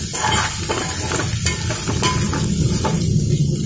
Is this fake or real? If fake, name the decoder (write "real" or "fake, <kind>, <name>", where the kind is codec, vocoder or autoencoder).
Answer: real